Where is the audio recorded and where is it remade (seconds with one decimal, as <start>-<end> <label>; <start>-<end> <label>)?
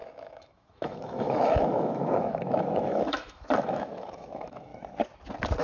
0.0-4.7 remade; 4.7-5.6 recorded